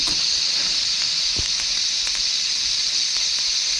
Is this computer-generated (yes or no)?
no